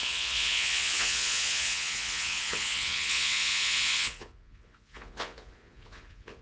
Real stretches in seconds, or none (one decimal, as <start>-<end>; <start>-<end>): none